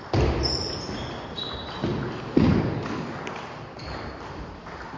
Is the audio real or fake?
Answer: real